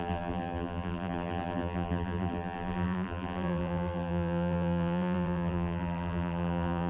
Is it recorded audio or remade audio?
remade